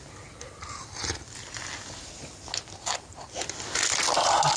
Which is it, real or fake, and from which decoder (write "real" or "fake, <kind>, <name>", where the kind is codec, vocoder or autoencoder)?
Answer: real